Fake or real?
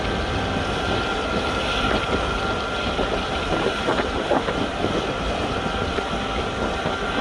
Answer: real